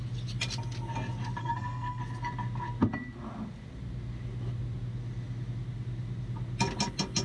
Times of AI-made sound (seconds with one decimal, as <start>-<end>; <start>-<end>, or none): 1.4-2.0